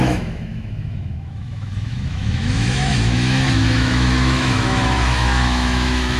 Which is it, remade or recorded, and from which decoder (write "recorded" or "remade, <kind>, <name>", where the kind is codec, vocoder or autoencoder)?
remade, autoencoder, DAC-VAE